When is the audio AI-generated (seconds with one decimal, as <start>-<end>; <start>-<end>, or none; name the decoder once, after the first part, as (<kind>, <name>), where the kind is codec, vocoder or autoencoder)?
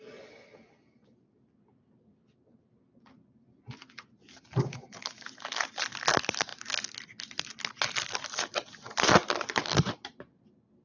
none